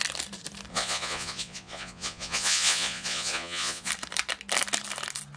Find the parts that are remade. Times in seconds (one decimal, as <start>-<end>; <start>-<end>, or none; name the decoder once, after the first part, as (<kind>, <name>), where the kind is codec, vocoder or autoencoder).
0.7-3.9 (vocoder, Vocos)

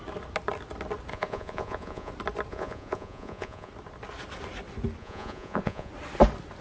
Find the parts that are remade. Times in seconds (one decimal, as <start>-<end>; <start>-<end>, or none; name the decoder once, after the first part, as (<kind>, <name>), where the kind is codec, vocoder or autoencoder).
1.1-2.1 (vocoder, Vocos); 2.5-3.7; 5.0-5.9